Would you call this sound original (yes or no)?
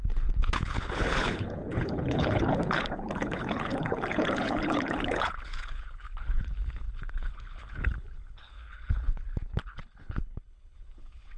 no